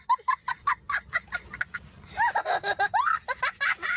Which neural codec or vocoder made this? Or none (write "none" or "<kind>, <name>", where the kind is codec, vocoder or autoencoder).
none